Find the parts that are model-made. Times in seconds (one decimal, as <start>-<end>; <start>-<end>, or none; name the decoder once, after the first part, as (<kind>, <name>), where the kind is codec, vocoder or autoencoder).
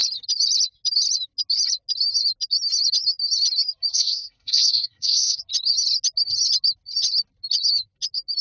3.9-5.4 (codec, SNAC)